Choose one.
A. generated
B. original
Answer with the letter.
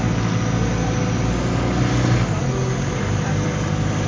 B